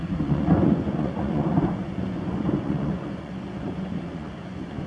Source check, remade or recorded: remade